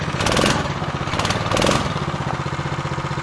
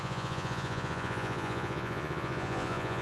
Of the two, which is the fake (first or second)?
second